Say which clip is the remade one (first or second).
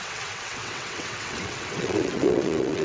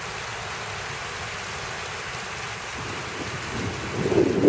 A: first